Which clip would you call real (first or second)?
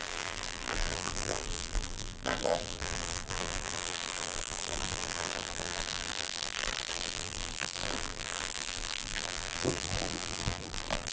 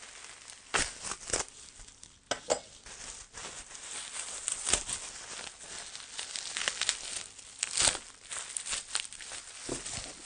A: second